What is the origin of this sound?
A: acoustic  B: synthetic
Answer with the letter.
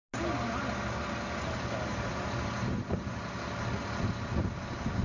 A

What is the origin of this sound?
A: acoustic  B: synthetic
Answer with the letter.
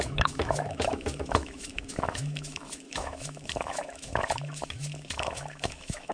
B